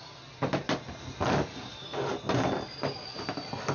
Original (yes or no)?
yes